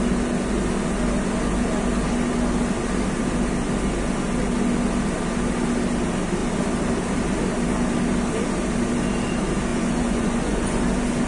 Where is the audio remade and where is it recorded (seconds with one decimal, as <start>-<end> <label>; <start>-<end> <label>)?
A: 0.0-9.7 recorded; 9.7-10.8 remade; 10.8-11.3 recorded